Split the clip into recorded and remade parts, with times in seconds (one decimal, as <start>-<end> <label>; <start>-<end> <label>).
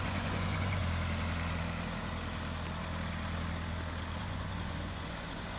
0.0-0.8 remade; 0.8-4.2 recorded; 4.2-5.6 remade